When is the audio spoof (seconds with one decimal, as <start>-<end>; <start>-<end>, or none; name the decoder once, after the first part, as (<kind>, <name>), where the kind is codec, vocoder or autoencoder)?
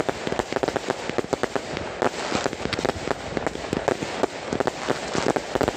none